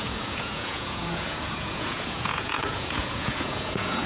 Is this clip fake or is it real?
fake